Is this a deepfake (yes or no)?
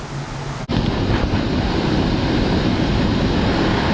no